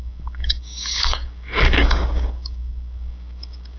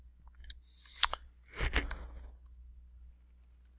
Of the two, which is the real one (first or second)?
second